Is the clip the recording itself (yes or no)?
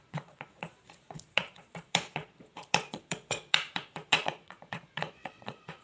no